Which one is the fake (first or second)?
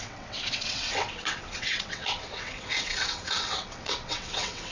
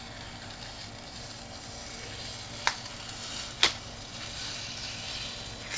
first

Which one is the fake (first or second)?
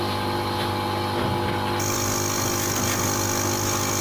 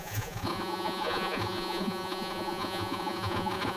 second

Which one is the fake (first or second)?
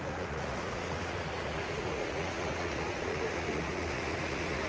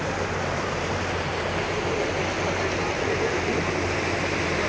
first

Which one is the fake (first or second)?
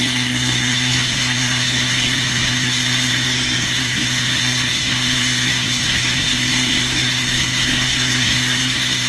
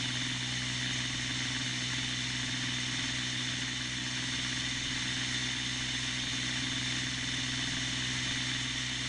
first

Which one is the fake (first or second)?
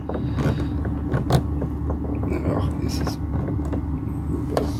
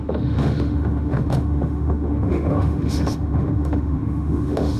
second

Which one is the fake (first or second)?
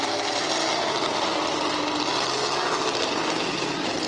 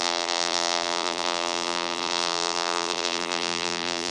second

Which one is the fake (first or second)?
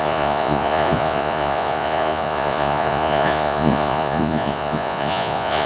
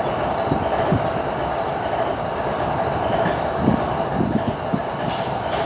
first